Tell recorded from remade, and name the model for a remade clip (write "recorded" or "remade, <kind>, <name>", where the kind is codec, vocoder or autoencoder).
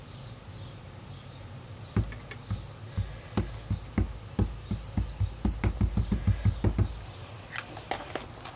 recorded